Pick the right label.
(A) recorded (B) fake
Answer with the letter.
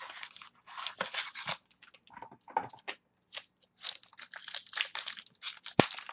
A